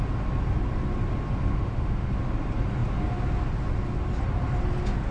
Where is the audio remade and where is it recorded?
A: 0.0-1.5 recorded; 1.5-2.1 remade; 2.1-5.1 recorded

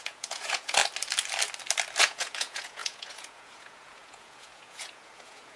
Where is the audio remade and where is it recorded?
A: 0.0-0.8 remade; 0.8-2.0 recorded; 2.0-5.6 remade